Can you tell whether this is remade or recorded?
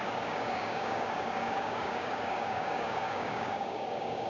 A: remade